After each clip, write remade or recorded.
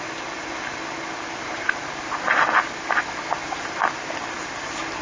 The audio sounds recorded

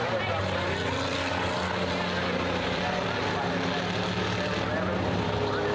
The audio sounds recorded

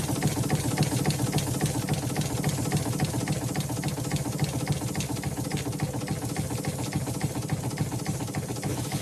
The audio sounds recorded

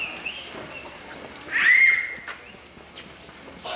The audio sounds recorded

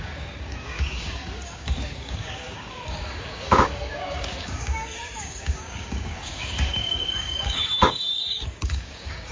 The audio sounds remade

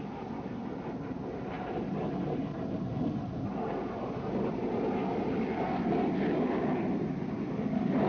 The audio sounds recorded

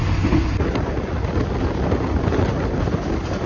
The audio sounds recorded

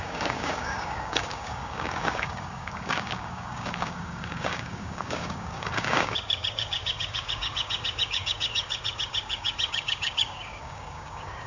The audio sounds remade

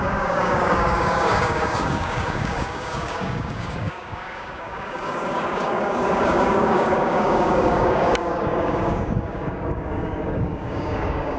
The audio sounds remade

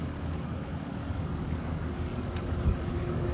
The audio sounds remade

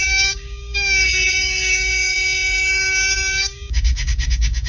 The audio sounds remade